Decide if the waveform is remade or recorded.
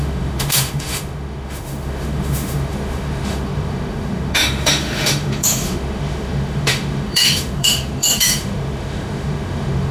remade